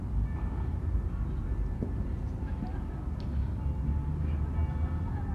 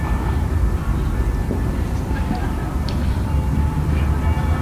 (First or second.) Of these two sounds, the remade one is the second